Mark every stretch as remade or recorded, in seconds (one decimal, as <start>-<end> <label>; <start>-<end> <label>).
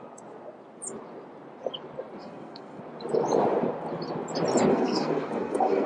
0.0-2.2 recorded; 2.2-2.8 remade; 2.8-4.7 recorded; 4.7-5.9 remade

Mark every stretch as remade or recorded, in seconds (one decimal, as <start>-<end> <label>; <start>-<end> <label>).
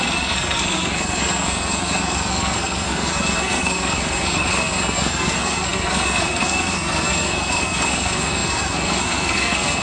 0.0-9.8 remade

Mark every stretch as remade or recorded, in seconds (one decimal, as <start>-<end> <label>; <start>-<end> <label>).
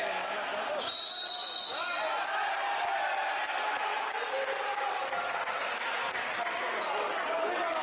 0.0-7.8 recorded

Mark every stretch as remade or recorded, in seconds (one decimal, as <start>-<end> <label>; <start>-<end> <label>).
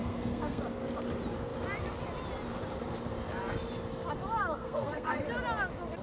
0.0-0.6 remade; 0.6-4.6 recorded; 4.6-5.2 remade; 5.2-6.0 recorded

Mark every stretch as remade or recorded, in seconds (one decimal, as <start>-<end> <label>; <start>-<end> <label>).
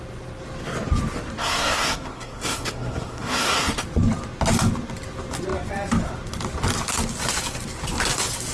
0.0-1.4 recorded; 1.4-3.7 remade; 3.7-8.5 recorded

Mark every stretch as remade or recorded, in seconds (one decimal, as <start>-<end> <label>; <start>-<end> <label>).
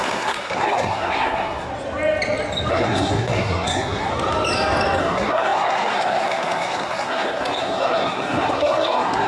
0.0-1.7 remade; 1.7-2.7 recorded; 2.7-4.1 remade; 4.1-5.0 recorded; 5.0-9.3 remade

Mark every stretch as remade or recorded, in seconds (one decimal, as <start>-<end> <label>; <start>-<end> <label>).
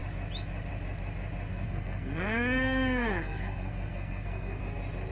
0.0-1.5 recorded; 1.5-4.6 remade; 4.6-5.1 recorded